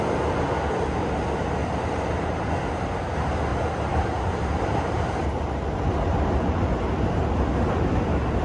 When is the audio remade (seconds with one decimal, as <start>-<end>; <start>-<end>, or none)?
1.6-2.5; 3.5-6.8